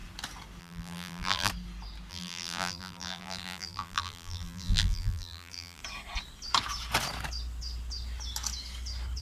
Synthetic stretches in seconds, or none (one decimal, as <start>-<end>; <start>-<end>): 0.6-1.5; 2.1-5.8